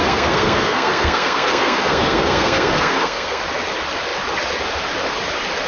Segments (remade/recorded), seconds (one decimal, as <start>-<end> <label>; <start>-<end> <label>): 0.0-3.4 remade; 3.4-5.7 recorded